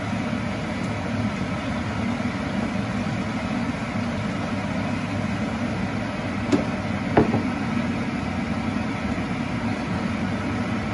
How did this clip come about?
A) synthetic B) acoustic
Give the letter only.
B